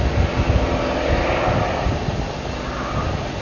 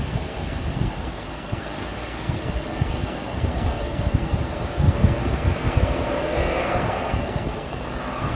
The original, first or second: first